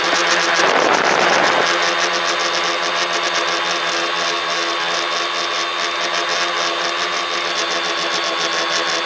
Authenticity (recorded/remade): recorded